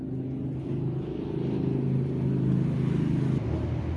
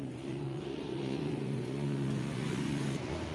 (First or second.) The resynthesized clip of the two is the second